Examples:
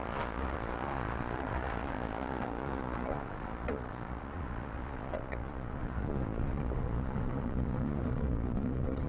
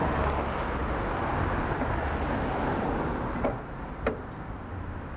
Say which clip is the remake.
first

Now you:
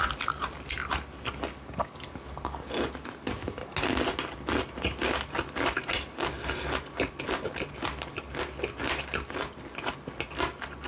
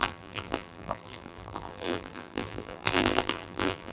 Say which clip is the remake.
second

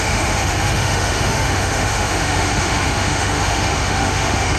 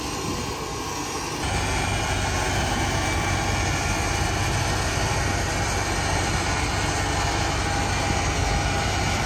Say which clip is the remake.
first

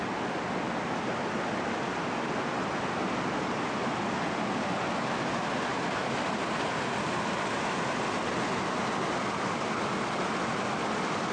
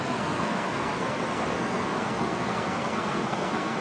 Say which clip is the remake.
second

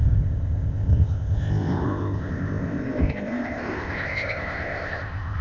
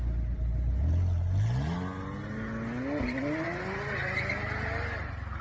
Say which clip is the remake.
first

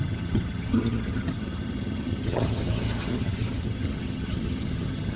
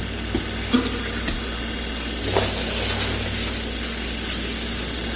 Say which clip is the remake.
first